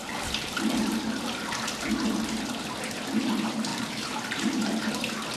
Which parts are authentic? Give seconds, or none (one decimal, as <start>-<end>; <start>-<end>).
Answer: 0.0-3.7; 4.9-5.4